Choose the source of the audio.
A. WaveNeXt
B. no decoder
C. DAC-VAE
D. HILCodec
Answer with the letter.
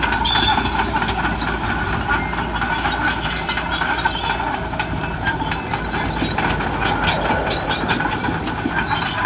B